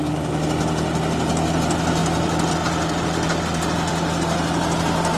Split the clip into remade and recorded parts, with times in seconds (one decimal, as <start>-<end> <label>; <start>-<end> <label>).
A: 0.0-5.2 recorded